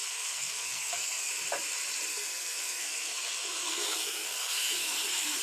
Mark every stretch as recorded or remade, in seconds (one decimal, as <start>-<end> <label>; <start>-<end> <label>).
0.0-1.3 remade; 1.3-2.1 recorded; 2.1-5.4 remade